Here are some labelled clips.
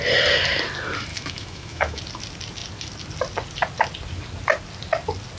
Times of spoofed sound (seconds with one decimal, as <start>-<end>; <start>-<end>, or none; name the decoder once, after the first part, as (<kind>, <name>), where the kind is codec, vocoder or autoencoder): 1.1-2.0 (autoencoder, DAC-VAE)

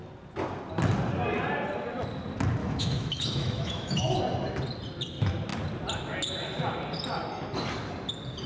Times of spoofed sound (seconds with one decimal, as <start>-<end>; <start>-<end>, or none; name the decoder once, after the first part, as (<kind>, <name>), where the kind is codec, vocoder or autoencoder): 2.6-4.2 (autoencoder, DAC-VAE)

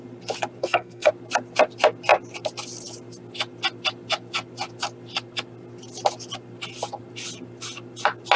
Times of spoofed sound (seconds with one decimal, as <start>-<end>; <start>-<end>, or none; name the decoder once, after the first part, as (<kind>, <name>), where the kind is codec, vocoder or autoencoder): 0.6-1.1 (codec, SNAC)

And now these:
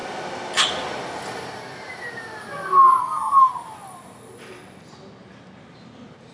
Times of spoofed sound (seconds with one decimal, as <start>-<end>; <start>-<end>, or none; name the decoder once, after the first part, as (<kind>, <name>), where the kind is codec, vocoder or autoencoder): 3.0-3.5 (codec, SNAC)